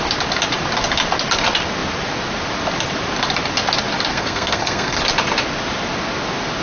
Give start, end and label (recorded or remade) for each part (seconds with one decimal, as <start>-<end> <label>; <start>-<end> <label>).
0.0-4.1 recorded; 4.1-5.0 remade; 5.0-6.6 recorded